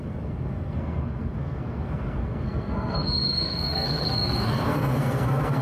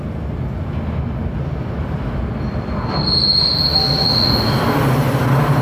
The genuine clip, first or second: second